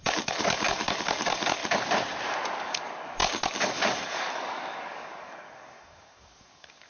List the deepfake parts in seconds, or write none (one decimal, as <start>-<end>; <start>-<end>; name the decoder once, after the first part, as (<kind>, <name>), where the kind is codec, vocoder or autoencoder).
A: 0.0-1.6 (codec, DAC); 2.6-6.9